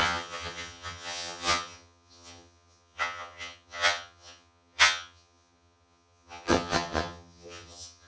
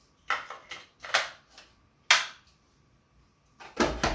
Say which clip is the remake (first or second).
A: first